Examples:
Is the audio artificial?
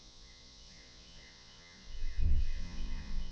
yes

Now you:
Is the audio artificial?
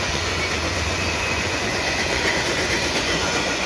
yes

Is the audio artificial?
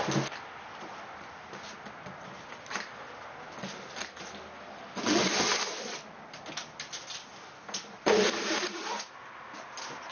no